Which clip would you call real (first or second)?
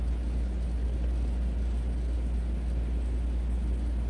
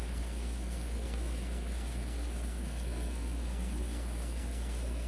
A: first